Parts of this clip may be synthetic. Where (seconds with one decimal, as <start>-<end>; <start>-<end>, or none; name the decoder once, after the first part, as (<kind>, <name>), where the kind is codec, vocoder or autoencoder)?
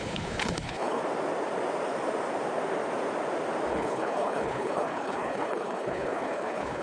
0.0-1.0 (codec, HILCodec); 3.7-6.8